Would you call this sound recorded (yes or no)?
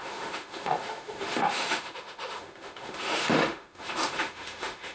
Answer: no